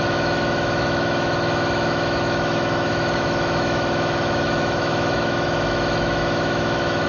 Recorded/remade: remade